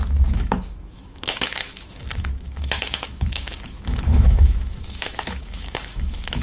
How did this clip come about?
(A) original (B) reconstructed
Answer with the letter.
B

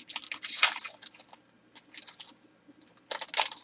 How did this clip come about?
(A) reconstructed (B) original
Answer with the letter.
B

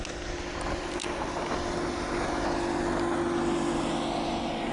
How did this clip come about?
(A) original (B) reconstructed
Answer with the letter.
A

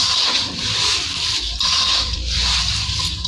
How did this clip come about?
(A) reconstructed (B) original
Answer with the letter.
A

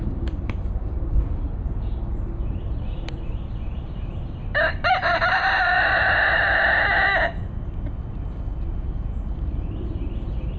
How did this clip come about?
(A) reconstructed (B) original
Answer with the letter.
A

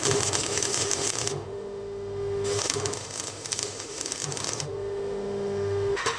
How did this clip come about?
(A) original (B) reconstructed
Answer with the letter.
B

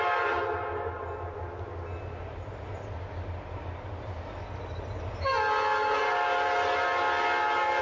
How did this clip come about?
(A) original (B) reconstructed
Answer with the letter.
A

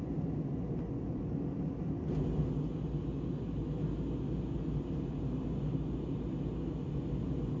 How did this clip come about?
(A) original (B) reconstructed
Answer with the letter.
A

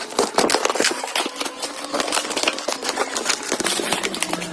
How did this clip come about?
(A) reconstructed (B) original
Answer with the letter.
B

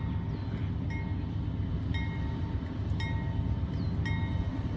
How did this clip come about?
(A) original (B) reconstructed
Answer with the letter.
A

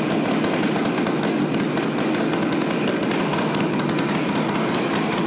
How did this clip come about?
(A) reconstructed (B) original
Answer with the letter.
B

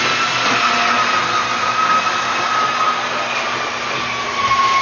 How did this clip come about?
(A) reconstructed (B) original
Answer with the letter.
B